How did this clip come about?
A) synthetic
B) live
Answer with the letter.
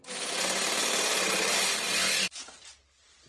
B